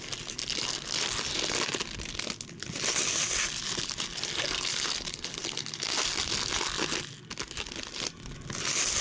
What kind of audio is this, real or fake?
real